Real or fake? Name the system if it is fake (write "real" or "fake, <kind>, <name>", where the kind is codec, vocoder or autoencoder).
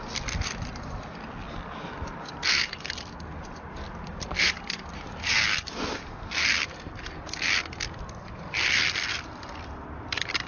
real